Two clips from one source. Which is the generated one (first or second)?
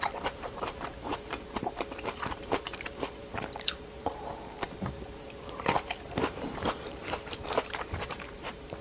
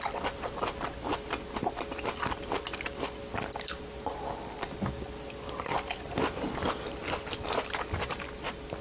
first